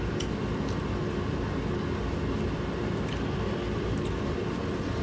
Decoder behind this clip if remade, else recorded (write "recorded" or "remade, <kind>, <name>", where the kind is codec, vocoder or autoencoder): recorded